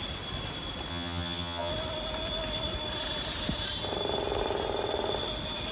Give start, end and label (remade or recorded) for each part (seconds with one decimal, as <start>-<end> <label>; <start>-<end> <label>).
0.0-0.9 recorded; 0.9-1.7 remade; 1.7-5.7 recorded